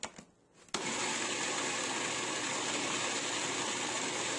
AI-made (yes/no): no